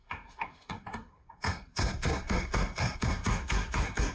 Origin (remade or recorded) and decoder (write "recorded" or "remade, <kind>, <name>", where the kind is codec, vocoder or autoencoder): remade, codec, SNAC